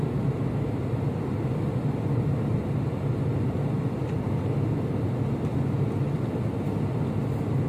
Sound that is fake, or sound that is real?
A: real